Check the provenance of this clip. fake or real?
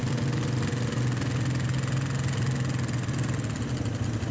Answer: real